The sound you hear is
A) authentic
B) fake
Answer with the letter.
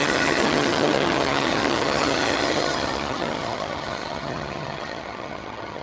B